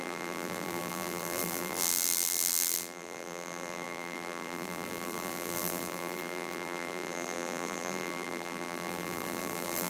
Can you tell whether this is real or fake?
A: fake